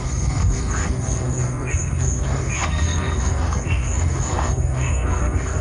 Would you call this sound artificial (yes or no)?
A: yes